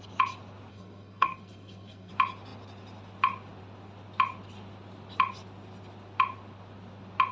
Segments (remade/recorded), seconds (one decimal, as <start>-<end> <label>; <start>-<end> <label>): 0.0-0.7 recorded; 0.7-2.1 remade; 2.1-7.3 recorded